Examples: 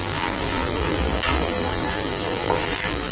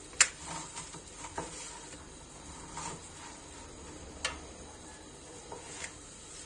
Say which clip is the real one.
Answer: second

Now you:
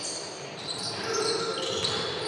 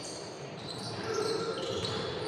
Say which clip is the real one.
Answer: first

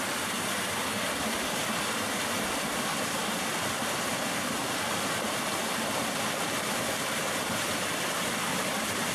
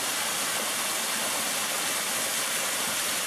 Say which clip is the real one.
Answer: second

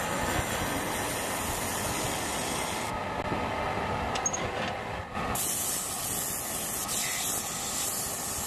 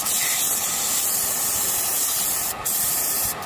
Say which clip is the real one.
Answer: first